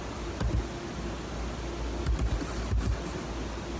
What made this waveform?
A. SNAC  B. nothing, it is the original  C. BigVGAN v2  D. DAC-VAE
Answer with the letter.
B